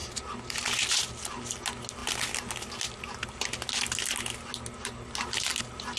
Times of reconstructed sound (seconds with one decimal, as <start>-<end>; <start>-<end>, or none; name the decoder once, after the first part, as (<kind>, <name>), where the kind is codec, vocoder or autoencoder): none